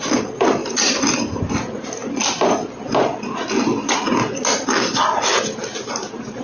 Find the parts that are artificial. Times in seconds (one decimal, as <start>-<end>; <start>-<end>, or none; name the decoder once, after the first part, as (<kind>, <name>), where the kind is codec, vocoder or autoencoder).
0.6-1.5 (vocoder, BigVGAN v2)